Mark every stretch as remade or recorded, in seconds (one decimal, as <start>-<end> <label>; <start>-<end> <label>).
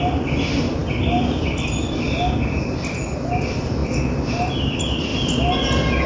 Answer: 0.0-6.1 recorded